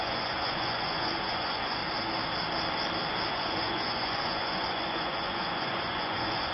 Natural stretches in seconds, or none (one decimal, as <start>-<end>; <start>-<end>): 1.8-3.3